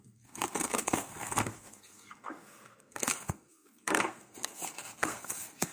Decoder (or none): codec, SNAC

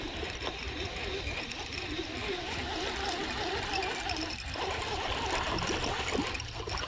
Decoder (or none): none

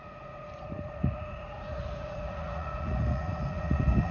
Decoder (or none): vocoder, Vocos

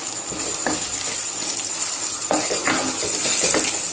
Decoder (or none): none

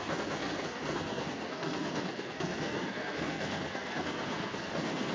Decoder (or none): codec, SNAC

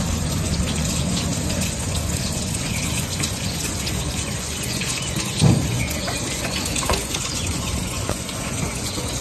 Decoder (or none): vocoder, Vocos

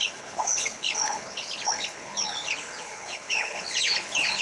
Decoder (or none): codec, HILCodec